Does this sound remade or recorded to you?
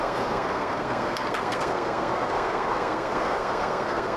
remade